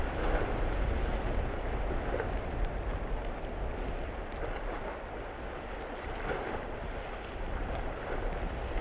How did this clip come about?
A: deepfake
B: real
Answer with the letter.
B